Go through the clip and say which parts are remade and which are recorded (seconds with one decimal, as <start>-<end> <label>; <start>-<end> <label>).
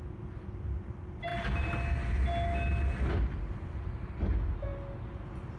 0.0-5.6 recorded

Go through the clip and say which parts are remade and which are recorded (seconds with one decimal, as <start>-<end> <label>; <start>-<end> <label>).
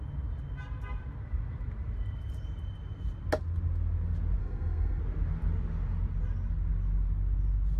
0.0-4.4 recorded; 4.4-5.0 remade; 5.0-7.8 recorded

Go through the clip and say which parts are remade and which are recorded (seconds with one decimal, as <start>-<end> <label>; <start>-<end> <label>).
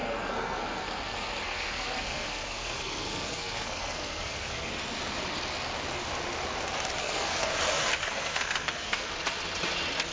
0.0-4.7 remade; 4.7-7.0 recorded; 7.0-7.5 remade; 7.5-8.0 recorded; 8.0-9.1 remade; 9.1-10.1 recorded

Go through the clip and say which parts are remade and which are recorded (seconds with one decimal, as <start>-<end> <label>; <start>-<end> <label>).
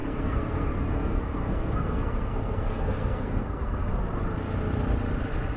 0.0-3.9 remade; 3.9-5.6 recorded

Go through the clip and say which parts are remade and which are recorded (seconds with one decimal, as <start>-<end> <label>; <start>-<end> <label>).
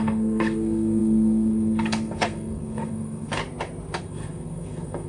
0.0-3.4 remade; 3.4-4.0 recorded; 4.0-5.1 remade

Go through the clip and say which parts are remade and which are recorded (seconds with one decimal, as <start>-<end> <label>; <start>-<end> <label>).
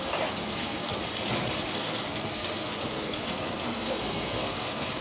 0.0-0.4 recorded; 0.4-1.0 remade; 1.0-1.7 recorded; 1.7-5.0 remade